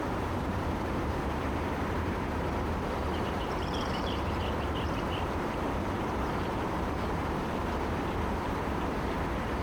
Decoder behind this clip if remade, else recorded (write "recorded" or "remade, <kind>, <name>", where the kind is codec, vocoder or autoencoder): remade, vocoder, BigVGAN v2